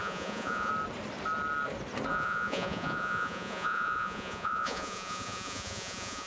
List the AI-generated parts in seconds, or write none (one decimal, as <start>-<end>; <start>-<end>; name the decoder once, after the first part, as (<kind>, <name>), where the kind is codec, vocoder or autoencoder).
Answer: 0.0-0.7 (vocoder, Vocos); 2.1-6.3